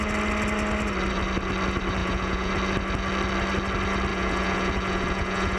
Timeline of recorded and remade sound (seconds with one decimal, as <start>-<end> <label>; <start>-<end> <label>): 0.0-2.0 recorded; 2.0-2.5 remade; 2.5-4.1 recorded; 4.1-5.6 remade